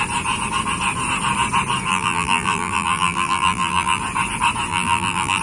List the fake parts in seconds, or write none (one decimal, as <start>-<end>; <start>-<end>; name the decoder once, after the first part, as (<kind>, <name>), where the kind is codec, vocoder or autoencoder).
1.9-4.0 (vocoder, BigVGAN v2); 4.7-5.4

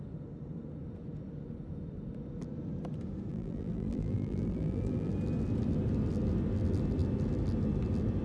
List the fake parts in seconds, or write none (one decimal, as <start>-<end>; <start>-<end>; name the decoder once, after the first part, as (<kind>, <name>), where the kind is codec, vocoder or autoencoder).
3.3-5.1 (vocoder, BigVGAN v2)

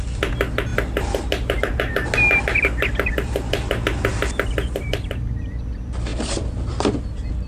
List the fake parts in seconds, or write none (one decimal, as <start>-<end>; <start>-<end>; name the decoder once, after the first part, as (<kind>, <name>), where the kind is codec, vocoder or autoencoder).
none

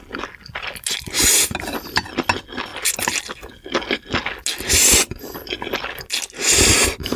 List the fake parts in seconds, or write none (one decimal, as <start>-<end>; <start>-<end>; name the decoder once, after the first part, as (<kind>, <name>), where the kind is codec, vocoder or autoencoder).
none